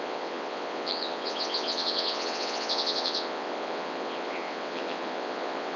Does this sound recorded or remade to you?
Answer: remade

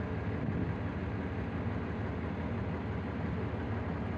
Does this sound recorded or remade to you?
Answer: recorded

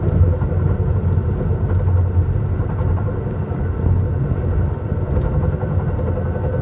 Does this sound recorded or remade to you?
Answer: recorded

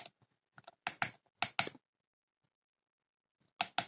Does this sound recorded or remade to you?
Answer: recorded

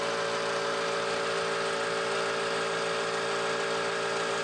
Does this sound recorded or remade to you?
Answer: recorded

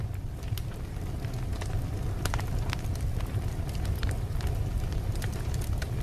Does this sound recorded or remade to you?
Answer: recorded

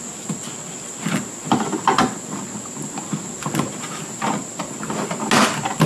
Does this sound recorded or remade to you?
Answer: recorded